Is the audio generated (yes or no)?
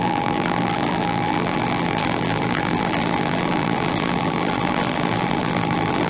yes